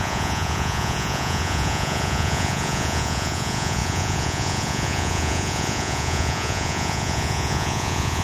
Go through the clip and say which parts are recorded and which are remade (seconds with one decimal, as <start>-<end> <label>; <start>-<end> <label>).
0.0-8.2 remade